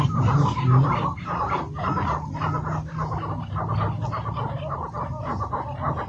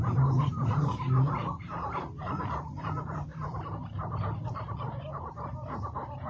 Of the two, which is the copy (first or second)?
second